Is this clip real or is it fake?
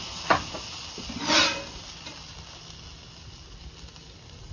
real